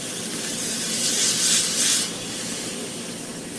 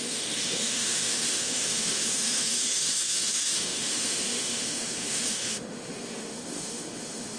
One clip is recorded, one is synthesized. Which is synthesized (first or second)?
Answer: second